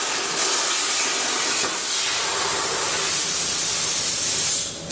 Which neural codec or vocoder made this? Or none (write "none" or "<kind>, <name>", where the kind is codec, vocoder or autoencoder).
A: none